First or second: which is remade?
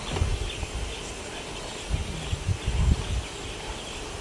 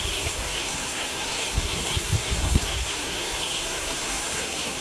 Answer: second